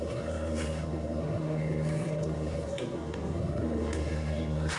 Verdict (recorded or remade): remade